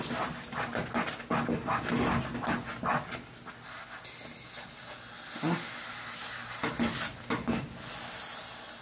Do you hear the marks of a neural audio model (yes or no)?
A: no